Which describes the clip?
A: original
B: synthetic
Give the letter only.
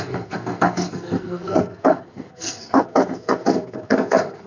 B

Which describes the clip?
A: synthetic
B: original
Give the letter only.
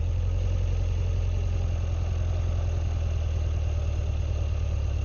B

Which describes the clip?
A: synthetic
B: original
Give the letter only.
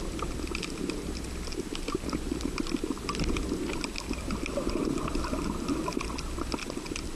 B